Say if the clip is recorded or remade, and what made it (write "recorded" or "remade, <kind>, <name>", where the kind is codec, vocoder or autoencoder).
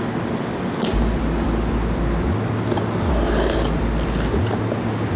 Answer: recorded